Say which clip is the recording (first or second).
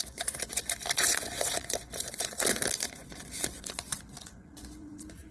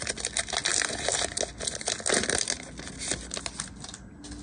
second